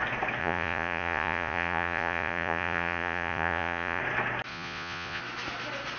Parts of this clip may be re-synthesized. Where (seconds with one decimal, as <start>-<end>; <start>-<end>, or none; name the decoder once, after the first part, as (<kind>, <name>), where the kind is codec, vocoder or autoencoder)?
0.4-4.0 (vocoder, Vocos); 4.5-5.2

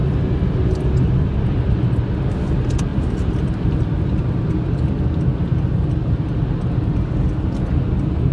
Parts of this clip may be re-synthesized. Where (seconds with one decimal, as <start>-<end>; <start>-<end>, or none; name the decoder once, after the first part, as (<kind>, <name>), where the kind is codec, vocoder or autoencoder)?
none